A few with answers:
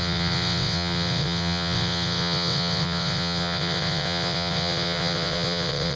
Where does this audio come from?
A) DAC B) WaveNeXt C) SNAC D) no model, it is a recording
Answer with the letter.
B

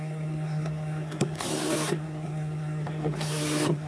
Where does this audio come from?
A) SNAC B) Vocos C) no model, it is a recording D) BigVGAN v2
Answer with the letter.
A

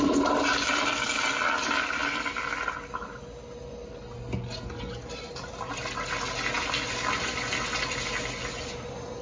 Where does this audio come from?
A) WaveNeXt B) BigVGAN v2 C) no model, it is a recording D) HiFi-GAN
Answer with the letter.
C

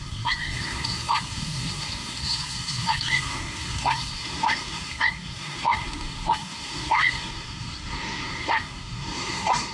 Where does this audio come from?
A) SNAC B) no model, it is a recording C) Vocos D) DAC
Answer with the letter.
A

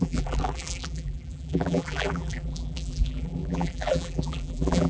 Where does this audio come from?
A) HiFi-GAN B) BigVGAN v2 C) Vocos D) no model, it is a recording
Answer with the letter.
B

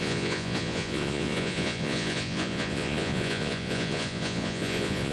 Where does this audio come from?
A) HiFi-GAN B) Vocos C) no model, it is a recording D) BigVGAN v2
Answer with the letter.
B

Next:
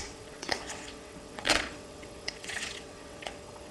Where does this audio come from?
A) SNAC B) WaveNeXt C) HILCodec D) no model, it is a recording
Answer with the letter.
B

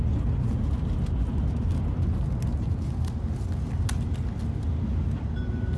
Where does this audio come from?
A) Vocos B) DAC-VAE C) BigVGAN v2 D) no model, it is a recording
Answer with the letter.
D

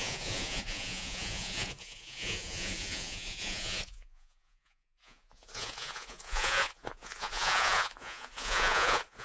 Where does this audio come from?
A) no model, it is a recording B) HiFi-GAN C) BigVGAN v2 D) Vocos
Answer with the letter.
D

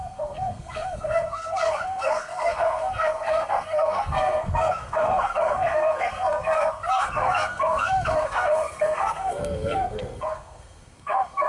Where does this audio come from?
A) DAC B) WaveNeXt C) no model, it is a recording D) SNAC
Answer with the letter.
D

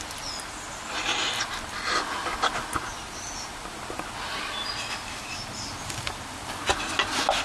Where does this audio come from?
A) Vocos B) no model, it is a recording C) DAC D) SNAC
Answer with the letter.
B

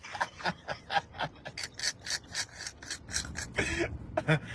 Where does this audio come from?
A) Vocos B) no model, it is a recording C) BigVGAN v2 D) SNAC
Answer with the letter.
B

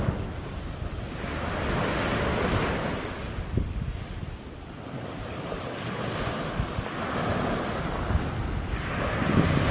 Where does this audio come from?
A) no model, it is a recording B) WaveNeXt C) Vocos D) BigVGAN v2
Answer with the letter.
A